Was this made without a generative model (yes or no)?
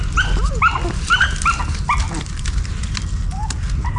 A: yes